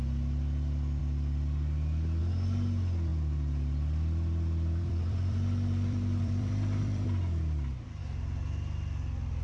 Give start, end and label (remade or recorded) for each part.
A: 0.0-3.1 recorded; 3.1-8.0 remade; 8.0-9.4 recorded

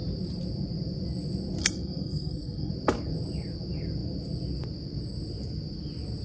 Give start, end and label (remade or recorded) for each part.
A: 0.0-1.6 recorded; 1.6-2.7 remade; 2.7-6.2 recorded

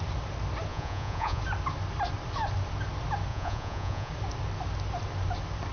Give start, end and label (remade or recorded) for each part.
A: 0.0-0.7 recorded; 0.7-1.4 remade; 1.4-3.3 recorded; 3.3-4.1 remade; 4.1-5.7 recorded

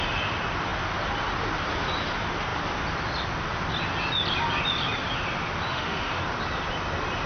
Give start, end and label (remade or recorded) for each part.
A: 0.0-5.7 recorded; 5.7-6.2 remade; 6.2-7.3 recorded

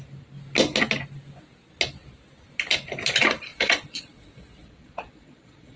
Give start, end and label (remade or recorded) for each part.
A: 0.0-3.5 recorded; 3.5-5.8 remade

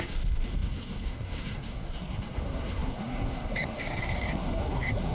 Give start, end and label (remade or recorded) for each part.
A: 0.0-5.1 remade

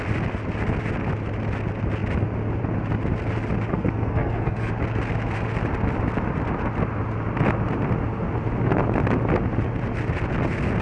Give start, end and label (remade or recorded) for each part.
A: 0.0-3.7 recorded; 3.7-4.7 remade; 4.7-10.8 recorded

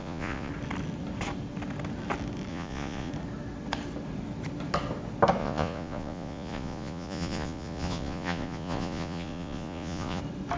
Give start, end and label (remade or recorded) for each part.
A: 0.0-0.5 remade; 0.5-2.5 recorded; 2.5-3.1 remade; 3.1-5.4 recorded; 5.4-10.2 remade; 10.2-10.6 recorded